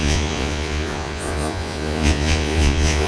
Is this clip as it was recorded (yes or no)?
no